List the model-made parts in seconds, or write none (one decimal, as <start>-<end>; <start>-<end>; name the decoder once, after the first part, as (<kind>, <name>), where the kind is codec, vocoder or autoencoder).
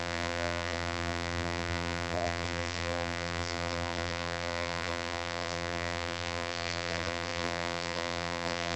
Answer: 0.0-8.8 (vocoder, BigVGAN v2)